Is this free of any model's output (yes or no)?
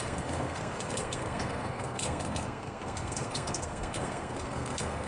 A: no